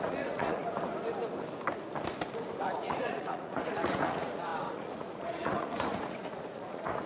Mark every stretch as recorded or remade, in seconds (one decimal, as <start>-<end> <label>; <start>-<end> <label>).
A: 0.0-0.6 remade; 0.6-2.6 recorded; 2.6-7.1 remade